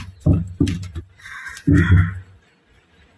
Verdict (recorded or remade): recorded